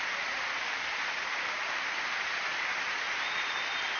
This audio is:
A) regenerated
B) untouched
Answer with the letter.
B